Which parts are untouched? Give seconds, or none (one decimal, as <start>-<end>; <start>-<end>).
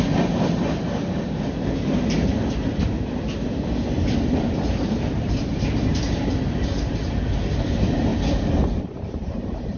2.2-4.7; 8.1-8.8